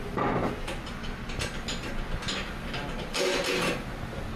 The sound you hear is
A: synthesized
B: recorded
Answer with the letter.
B